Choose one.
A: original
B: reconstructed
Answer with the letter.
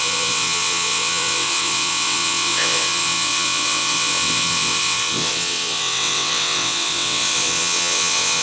B